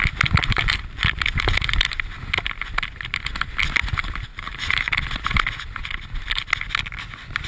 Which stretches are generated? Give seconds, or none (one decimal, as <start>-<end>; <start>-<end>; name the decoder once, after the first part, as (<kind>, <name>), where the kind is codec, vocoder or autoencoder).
0.4-1.7 (vocoder, BigVGAN v2); 4.3-4.9